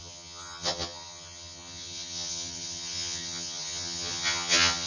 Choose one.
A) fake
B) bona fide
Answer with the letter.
A